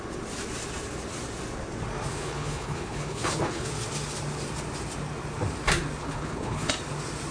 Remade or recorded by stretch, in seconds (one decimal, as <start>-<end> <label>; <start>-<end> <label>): 0.0-2.1 recorded; 2.1-3.7 remade; 3.7-6.0 recorded; 6.0-6.7 remade; 6.7-7.3 recorded